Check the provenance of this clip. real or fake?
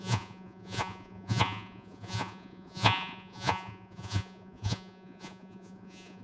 fake